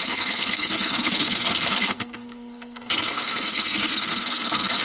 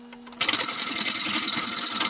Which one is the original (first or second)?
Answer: second